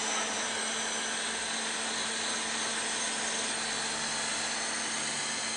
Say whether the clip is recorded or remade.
recorded